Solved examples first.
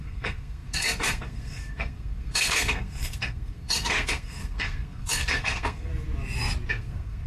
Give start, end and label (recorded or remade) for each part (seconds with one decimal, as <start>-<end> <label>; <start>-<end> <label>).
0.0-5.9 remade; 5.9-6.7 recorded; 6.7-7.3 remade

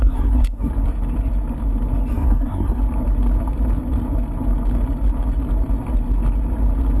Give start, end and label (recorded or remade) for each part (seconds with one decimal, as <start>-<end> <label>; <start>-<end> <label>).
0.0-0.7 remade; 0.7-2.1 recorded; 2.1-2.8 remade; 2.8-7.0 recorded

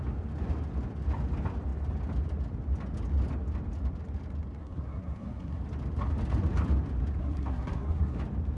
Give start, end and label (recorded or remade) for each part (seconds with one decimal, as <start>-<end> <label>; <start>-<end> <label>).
0.0-4.6 recorded; 4.6-5.6 remade; 5.6-7.2 recorded; 7.2-8.2 remade; 8.2-8.6 recorded

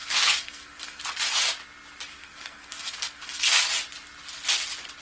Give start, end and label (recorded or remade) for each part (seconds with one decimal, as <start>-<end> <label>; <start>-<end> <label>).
0.0-1.0 remade; 1.0-2.1 recorded; 2.1-3.6 remade; 3.6-5.0 recorded

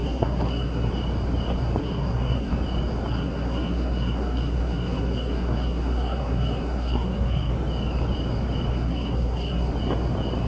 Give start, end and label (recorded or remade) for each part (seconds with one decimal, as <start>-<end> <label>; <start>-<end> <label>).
0.0-0.9 remade; 0.9-1.8 recorded; 1.8-2.5 remade; 2.5-3.1 recorded; 3.1-7.5 remade; 7.5-8.7 recorded; 8.7-9.7 remade; 9.7-10.5 recorded